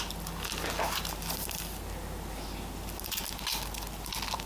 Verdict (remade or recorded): recorded